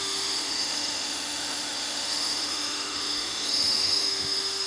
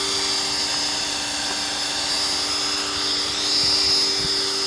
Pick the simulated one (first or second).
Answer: first